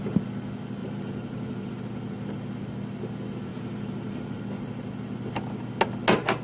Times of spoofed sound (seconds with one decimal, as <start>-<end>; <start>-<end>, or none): 0.8-1.7; 3.5-4.4